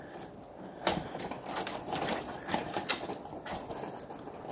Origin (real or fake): fake